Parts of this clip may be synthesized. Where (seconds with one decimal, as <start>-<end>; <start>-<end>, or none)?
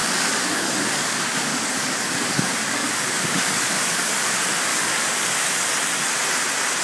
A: 0.0-4.1; 4.7-5.7